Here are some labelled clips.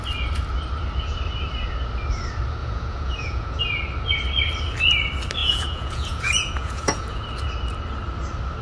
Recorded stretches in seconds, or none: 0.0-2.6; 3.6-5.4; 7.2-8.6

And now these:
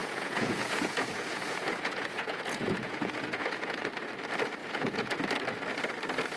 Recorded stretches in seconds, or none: 3.8-4.6; 5.2-6.4

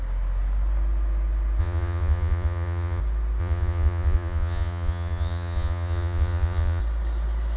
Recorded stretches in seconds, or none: 0.0-1.6; 3.0-3.4; 6.8-7.6